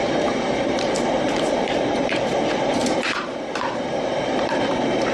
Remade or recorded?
remade